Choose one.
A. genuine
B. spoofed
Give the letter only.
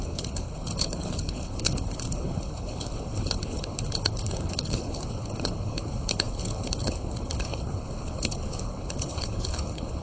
B